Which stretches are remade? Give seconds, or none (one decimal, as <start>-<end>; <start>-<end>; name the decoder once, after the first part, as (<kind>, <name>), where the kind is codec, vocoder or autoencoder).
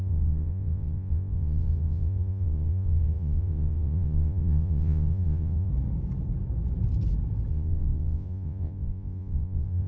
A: 0.0-5.7 (vocoder, Vocos); 7.5-9.9